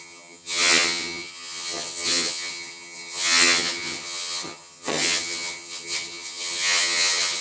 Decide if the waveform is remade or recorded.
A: remade